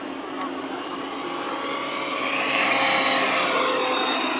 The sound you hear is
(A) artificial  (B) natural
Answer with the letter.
B